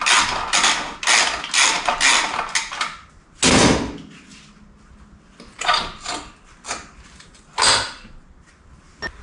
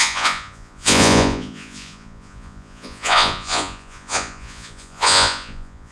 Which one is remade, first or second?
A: second